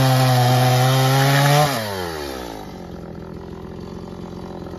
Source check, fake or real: real